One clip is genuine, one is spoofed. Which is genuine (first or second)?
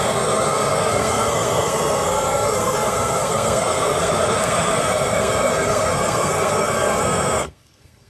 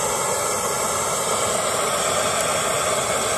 second